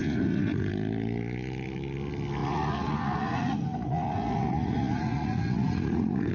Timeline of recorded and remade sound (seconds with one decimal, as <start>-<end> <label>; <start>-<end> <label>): 0.0-0.7 remade; 0.7-2.4 recorded; 2.4-6.3 remade